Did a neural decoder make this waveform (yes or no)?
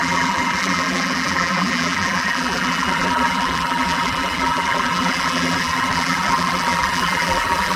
yes